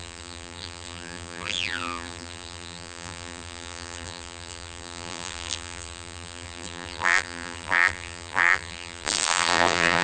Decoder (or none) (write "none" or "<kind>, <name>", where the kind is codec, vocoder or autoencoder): vocoder, BigVGAN v2